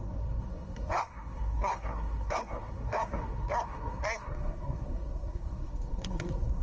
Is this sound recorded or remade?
remade